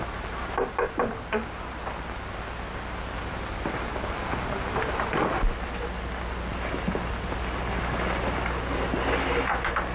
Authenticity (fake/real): real